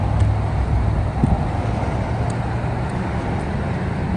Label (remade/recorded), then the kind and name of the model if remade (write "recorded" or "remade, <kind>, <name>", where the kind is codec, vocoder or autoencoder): recorded